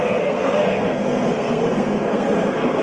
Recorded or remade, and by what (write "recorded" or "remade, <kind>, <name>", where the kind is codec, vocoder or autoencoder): remade, codec, SNAC